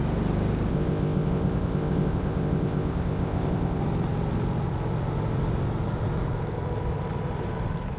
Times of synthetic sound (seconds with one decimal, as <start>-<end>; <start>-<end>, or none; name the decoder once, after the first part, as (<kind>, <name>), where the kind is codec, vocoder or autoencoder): 0.7-3.8 (codec, ZipCodec)